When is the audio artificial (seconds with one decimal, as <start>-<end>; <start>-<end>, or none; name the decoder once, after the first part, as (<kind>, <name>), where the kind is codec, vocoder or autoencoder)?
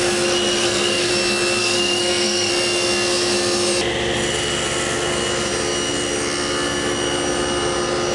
0.6-1.1 (codec, SNAC); 1.6-2.5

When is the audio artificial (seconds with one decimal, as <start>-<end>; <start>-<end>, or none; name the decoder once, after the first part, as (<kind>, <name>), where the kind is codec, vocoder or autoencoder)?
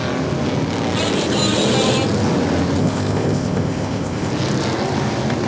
2.8-4.3 (codec, ZipCodec)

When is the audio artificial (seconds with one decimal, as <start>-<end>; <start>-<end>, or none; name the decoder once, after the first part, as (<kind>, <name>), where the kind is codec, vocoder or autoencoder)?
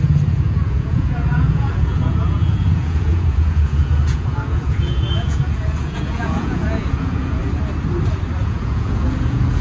0.0-7.4 (vocoder, Vocos); 8.4-9.6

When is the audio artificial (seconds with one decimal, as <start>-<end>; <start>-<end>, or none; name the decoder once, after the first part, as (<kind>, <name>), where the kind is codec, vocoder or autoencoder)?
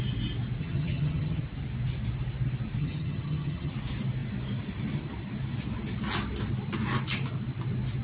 0.6-1.4 (vocoder, HiFi-GAN); 2.8-3.7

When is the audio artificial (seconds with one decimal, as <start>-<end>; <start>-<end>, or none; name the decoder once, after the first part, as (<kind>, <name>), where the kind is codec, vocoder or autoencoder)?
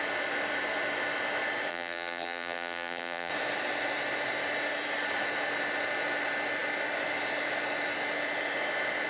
1.7-3.3 (vocoder, BigVGAN v2)